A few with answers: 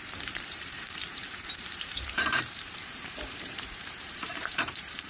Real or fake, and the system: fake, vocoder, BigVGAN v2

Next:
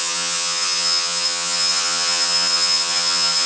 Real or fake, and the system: fake, vocoder, HiFi-GAN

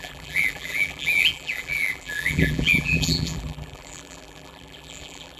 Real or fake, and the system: fake, vocoder, BigVGAN v2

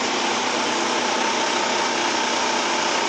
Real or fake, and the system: real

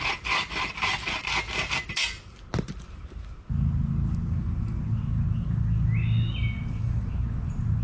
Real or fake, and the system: real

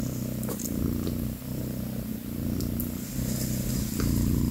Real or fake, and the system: real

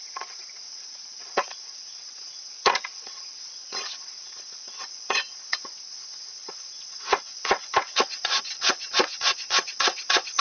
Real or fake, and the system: fake, vocoder, WaveNeXt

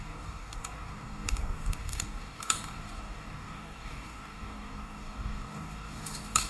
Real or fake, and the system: fake, codec, DAC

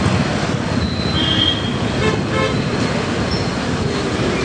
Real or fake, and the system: real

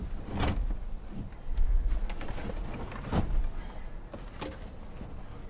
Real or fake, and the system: real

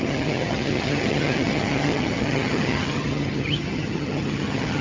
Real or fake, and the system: fake, vocoder, HiFi-GAN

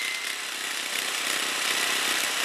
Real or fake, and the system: fake, vocoder, BigVGAN v2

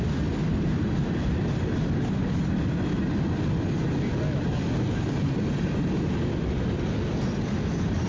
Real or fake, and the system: real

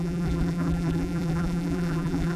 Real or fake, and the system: fake, vocoder, BigVGAN v2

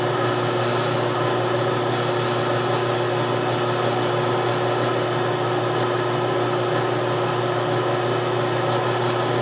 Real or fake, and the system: real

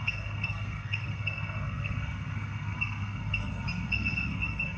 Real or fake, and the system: fake, codec, SNAC